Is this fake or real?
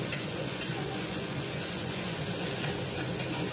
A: fake